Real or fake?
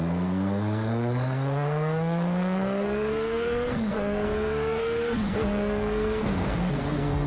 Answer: fake